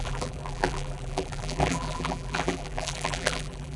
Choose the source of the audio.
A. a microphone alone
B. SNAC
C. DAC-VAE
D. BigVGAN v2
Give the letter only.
D